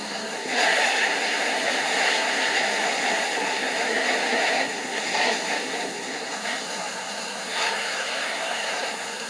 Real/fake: fake